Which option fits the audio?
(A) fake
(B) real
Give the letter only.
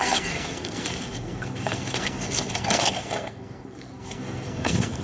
A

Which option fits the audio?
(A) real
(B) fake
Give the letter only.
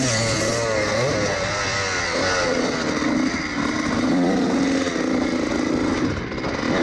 A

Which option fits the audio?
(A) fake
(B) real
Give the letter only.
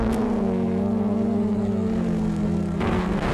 A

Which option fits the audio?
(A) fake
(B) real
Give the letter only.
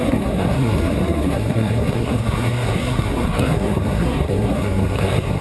A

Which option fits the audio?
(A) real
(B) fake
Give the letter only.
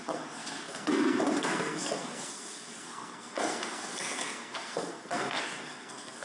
B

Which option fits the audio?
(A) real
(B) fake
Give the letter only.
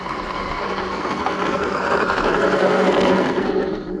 B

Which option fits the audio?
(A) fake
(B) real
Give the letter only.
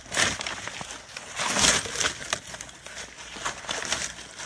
B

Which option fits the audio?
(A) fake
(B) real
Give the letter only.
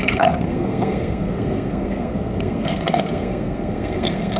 A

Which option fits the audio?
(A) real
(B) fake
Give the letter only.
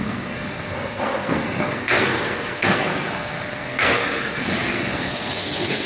B